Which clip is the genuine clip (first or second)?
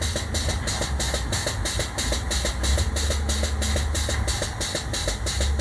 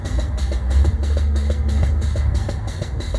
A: first